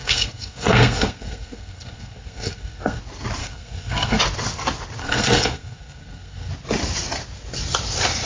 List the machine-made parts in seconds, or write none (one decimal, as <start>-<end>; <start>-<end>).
0.0-3.0; 3.4-4.2; 5.0-6.5